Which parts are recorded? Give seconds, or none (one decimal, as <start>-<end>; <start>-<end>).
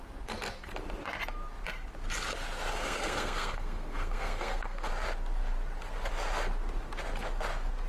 0.0-2.7; 4.9-7.9